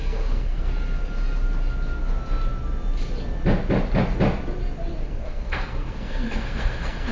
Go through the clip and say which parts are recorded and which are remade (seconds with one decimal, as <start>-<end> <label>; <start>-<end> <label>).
0.0-0.7 remade; 0.7-5.0 recorded; 5.0-7.1 remade